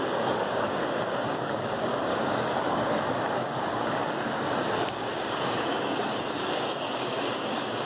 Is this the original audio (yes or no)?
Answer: no